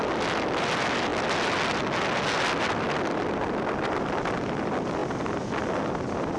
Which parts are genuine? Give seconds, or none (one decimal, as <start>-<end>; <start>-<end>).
0.0-6.4

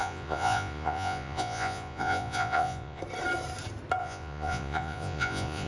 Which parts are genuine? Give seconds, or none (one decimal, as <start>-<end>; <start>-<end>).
3.0-4.0

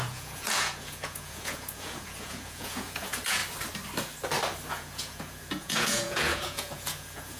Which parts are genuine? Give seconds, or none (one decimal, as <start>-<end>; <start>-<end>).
3.4-4.7